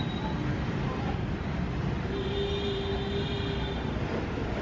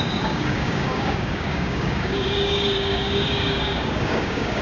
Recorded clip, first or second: first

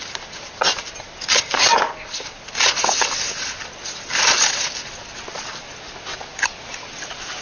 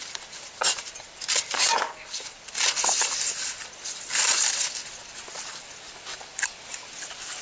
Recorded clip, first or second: first